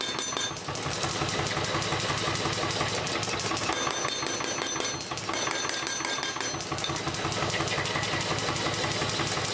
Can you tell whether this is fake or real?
real